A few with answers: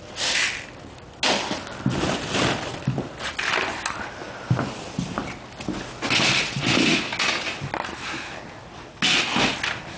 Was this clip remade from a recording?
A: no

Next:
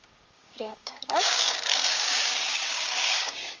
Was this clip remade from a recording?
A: yes